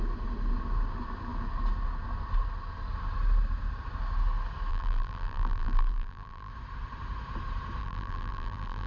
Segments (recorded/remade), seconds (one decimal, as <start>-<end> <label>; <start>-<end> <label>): 0.0-4.7 recorded; 4.7-6.5 remade; 6.5-7.8 recorded; 7.8-8.9 remade

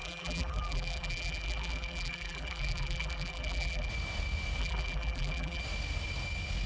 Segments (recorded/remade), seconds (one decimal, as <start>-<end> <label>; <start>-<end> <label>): 0.0-3.9 remade; 3.9-4.6 recorded; 4.6-5.6 remade; 5.6-6.7 recorded